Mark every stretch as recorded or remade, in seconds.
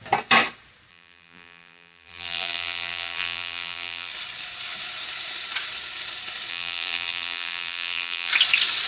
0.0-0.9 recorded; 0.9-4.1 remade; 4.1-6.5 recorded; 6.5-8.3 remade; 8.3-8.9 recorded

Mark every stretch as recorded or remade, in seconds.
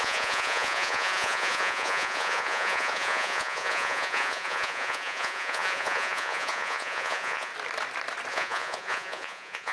0.0-7.5 remade; 7.5-8.3 recorded; 8.3-9.7 remade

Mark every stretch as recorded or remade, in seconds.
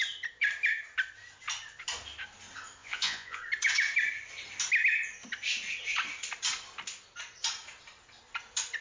0.0-2.8 recorded; 2.8-3.4 remade; 3.4-8.8 recorded